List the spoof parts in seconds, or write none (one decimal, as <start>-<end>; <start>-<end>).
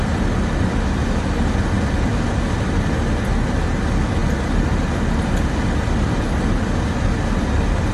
none